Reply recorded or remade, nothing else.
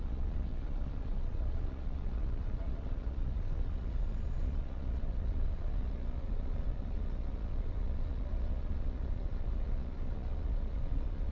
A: remade